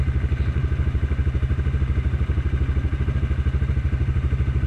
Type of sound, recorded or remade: recorded